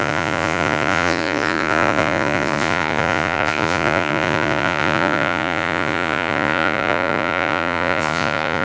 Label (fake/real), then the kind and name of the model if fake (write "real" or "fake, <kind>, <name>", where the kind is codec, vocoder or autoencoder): fake, vocoder, Vocos